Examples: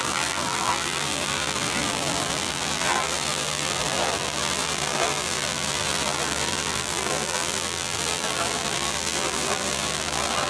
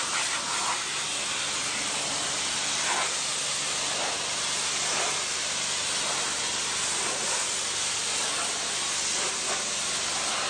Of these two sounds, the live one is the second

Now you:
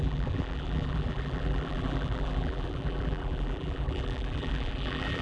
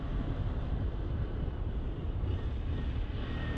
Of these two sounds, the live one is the second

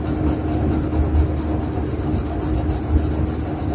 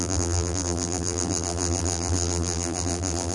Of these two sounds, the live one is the first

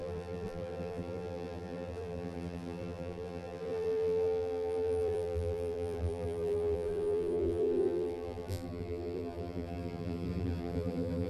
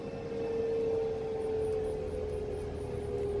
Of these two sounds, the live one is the second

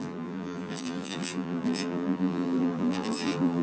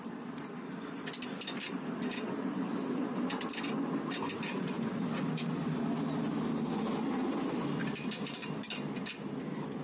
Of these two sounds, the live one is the second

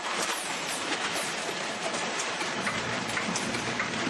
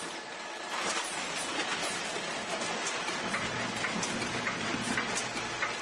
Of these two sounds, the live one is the second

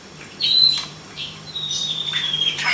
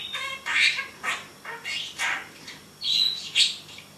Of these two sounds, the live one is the second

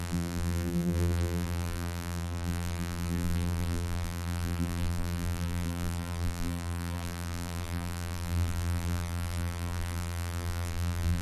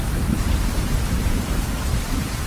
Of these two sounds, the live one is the second